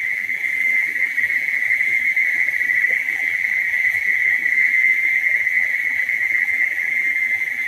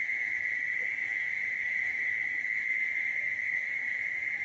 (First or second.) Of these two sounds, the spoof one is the first